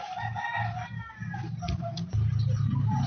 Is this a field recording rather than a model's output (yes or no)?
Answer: yes